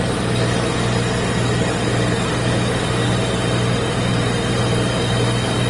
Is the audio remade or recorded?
recorded